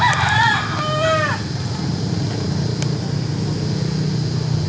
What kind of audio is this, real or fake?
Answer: real